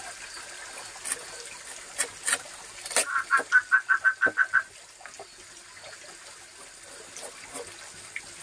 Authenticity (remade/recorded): recorded